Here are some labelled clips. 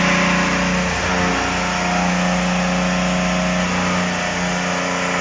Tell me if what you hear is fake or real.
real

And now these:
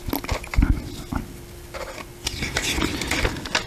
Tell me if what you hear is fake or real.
real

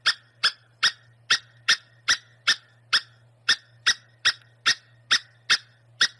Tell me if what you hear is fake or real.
real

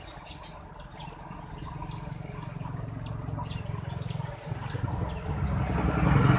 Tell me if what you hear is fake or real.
real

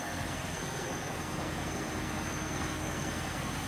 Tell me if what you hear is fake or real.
fake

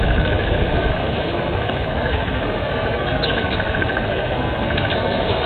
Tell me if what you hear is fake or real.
fake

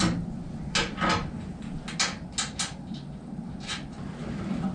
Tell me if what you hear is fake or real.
real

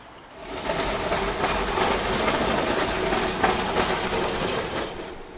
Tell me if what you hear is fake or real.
real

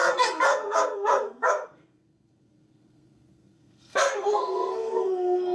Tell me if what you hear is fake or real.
fake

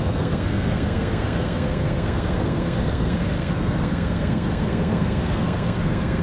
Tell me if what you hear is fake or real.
fake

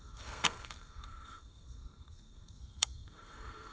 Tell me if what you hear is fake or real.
fake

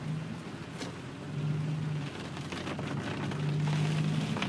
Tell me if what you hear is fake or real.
real